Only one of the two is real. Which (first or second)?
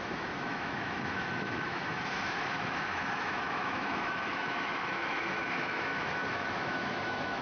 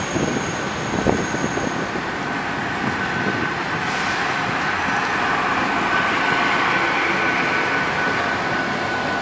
second